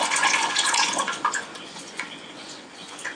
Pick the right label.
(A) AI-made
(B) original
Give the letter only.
A